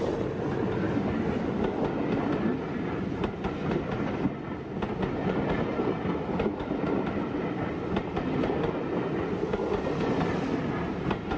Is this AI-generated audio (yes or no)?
no